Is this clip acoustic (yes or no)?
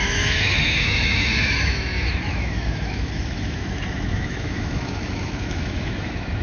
no